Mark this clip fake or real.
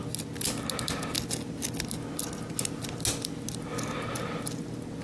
real